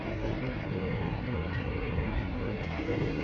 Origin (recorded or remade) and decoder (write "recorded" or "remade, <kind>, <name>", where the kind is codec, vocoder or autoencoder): remade, codec, SNAC